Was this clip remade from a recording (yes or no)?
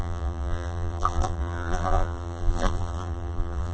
yes